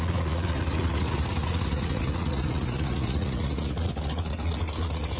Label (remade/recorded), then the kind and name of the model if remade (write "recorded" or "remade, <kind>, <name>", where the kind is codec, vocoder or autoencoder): remade, vocoder, Vocos